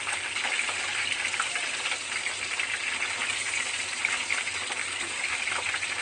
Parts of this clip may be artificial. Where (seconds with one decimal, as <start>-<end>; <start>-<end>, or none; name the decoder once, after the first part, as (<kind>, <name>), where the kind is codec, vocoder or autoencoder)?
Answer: 4.8-5.4 (codec, DAC)